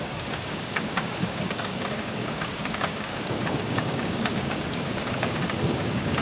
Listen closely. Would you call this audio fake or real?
fake